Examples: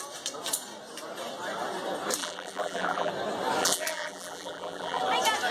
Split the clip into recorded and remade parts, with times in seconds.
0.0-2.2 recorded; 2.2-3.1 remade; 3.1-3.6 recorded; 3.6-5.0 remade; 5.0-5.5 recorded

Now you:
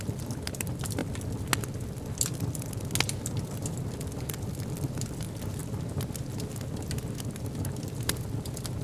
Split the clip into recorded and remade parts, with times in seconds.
0.0-1.0 remade; 1.0-4.2 recorded; 4.2-5.6 remade; 5.6-7.8 recorded; 7.8-8.8 remade

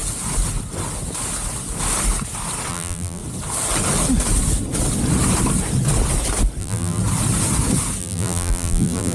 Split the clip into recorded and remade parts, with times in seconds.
0.0-2.7 recorded; 2.7-3.2 remade; 3.2-6.6 recorded; 6.6-7.0 remade; 7.0-8.0 recorded; 8.0-9.1 remade

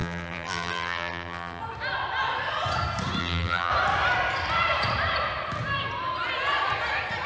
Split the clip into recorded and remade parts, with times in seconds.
0.0-1.6 remade; 1.6-3.2 recorded; 3.2-3.7 remade; 3.7-7.3 recorded

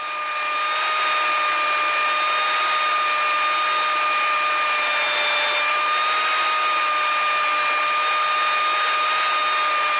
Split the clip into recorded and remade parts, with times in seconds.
0.0-10.0 recorded